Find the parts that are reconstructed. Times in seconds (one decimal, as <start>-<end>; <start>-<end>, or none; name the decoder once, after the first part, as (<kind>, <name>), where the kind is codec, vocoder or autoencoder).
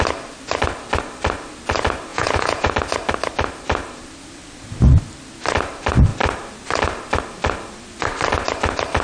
2.1-2.7 (vocoder, Vocos)